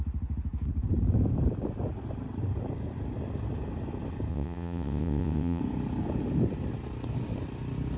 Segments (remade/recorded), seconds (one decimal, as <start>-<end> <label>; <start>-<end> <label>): 0.0-4.3 recorded; 4.3-5.6 remade; 5.6-8.0 recorded